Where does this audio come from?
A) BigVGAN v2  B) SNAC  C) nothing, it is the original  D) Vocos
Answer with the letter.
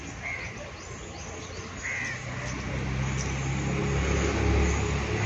C